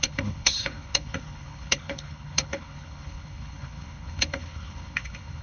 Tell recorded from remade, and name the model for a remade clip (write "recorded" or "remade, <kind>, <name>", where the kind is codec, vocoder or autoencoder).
remade, codec, HILCodec